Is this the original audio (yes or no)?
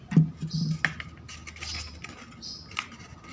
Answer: yes